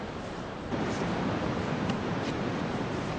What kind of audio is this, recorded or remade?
remade